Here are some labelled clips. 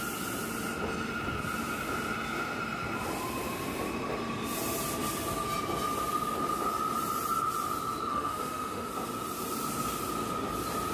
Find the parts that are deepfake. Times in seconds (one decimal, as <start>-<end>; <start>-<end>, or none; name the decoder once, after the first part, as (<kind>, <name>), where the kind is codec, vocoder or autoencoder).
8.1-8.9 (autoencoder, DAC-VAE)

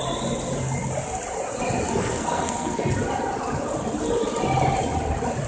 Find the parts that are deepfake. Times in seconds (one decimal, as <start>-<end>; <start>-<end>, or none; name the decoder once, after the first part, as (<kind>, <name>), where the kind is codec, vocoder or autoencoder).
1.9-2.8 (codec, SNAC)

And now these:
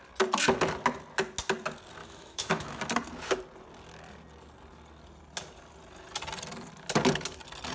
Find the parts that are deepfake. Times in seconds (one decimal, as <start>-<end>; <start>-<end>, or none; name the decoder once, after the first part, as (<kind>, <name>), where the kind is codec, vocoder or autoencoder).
2.0-2.8 (autoencoder, DAC-VAE)

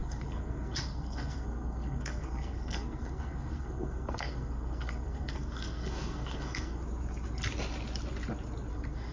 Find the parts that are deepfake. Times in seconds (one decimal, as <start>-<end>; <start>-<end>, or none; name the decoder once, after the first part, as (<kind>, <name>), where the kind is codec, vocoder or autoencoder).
0.0-6.8 (codec, SNAC); 8.7-9.1